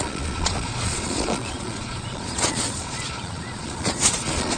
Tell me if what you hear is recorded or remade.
remade